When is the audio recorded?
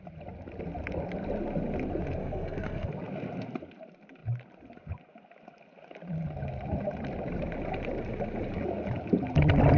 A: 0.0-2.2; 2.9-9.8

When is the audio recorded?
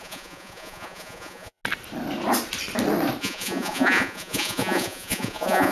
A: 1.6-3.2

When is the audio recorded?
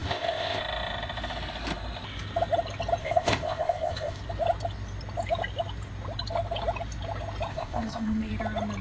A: 0.6-3.0; 4.2-7.5; 8.3-8.8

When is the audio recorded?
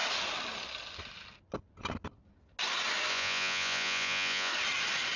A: 0.0-3.1; 4.5-5.2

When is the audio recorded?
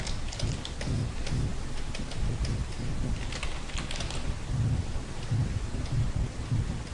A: 0.0-6.9